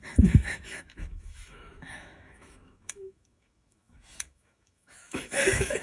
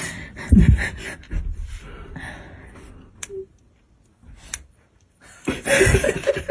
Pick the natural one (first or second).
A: second